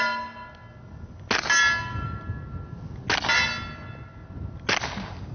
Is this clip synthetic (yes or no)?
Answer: no